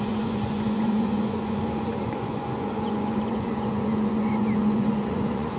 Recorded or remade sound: remade